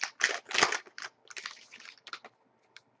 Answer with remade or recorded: recorded